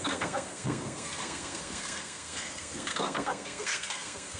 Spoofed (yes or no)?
yes